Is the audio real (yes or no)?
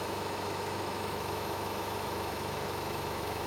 no